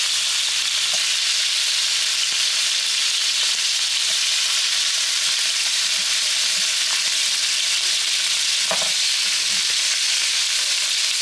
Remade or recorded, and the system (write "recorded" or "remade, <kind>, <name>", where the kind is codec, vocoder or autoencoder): recorded